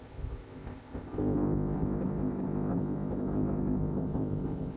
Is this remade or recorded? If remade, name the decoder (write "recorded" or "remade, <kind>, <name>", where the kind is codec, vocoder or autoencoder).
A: remade, codec, ZipCodec